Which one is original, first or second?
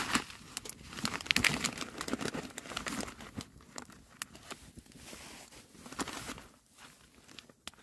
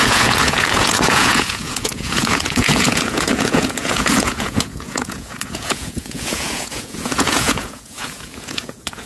first